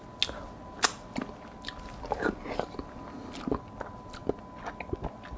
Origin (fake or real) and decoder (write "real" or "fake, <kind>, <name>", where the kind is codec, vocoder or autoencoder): real